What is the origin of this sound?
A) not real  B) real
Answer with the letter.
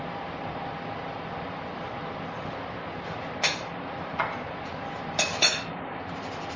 B